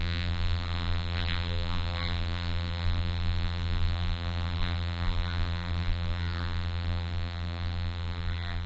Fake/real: fake